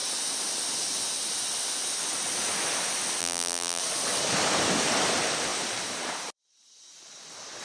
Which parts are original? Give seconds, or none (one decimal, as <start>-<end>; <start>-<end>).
0.0-3.2; 3.8-7.6